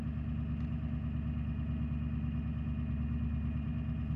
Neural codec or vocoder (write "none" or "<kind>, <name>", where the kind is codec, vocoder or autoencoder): none